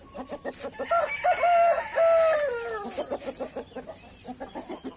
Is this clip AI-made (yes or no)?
no